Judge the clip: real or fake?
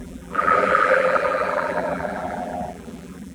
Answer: fake